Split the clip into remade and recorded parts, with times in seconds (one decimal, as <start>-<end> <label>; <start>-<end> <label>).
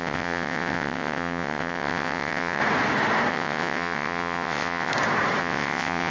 0.0-2.6 remade; 2.6-3.3 recorded; 3.3-4.9 remade; 4.9-5.4 recorded; 5.4-6.1 remade